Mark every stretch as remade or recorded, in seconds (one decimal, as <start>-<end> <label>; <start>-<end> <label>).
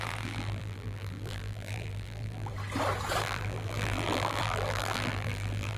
0.0-2.5 remade; 2.5-3.2 recorded; 3.2-5.8 remade